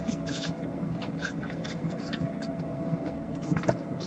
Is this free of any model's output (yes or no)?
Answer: no